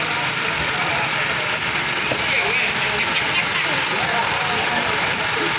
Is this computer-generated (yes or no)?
no